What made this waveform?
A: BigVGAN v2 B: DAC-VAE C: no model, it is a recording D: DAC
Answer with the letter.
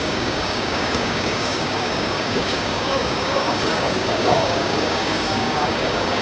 D